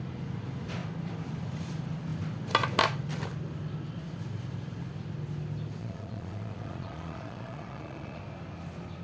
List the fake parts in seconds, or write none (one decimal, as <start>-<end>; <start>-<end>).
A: 5.8-8.2